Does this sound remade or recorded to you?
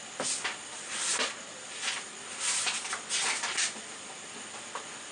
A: recorded